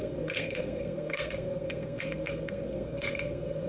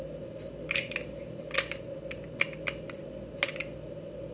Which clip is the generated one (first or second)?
first